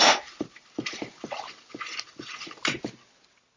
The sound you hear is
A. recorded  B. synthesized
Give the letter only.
A